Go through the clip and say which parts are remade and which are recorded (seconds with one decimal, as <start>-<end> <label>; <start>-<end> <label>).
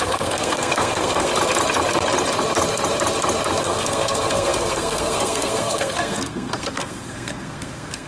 0.0-1.3 remade; 1.3-3.6 recorded; 3.6-8.1 remade